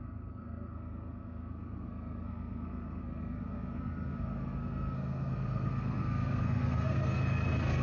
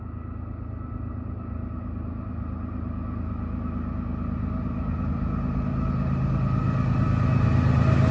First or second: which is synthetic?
first